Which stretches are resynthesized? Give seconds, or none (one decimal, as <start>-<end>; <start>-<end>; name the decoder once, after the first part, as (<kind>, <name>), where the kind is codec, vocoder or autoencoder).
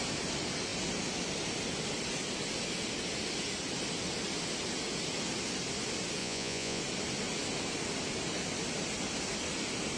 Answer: 6.2-6.8 (vocoder, Vocos)